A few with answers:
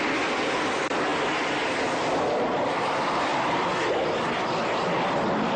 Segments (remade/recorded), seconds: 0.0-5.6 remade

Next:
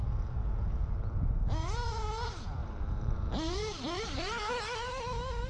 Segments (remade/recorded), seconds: 0.0-2.6 recorded; 2.6-4.5 remade; 4.5-5.5 recorded